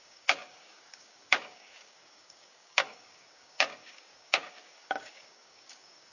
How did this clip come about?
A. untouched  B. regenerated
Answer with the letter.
B